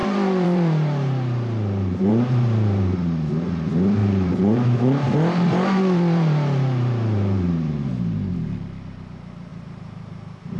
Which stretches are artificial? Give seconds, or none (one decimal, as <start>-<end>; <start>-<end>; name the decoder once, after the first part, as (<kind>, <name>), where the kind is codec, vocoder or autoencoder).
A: 0.0-2.8 (vocoder, BigVGAN v2); 4.0-7.9; 9.5-10.6